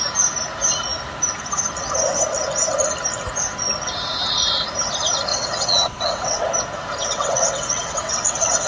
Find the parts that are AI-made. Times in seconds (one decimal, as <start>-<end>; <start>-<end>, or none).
5.3-6.4; 7.1-8.7